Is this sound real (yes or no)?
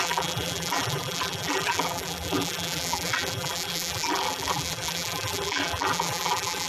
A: no